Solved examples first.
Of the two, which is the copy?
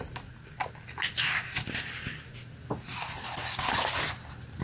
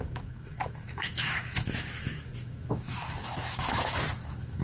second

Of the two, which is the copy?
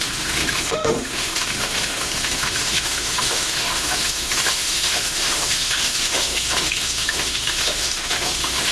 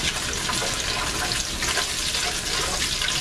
first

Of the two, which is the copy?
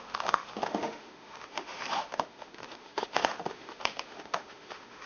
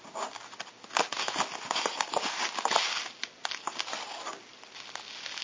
first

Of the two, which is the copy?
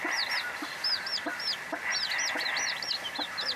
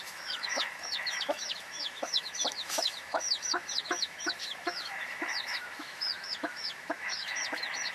second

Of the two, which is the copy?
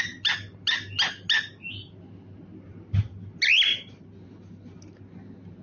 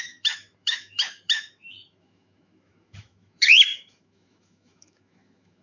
second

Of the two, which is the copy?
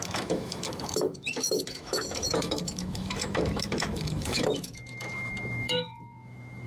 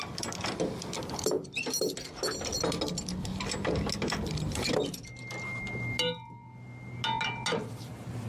first